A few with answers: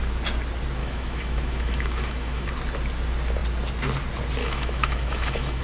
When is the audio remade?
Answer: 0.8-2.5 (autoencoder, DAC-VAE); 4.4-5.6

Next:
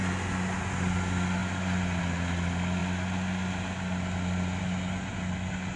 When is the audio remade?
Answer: none

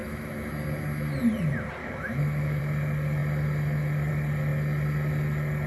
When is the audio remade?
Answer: 0.0-0.5 (autoencoder, DAC-VAE); 1.8-2.6

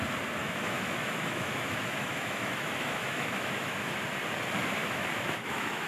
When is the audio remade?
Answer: 0.4-3.9 (autoencoder, DAC-VAE); 4.8-5.9

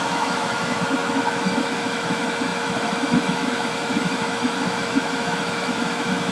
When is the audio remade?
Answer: 0.0-6.3 (autoencoder, DAC-VAE)

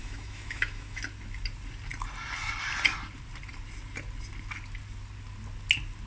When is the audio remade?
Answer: 0.0-1.0 (autoencoder, DAC-VAE)